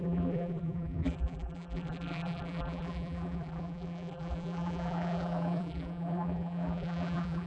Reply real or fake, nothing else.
fake